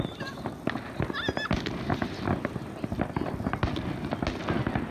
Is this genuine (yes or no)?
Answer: yes